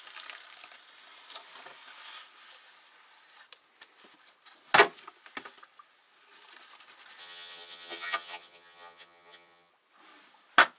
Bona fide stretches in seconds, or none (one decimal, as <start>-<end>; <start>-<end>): 0.0-7.2; 9.7-10.8